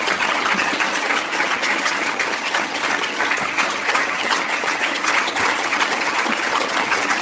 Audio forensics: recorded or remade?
remade